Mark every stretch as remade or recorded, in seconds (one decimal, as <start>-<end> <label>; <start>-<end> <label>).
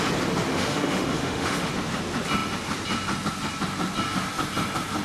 0.0-0.5 recorded; 0.5-1.7 remade; 1.7-5.0 recorded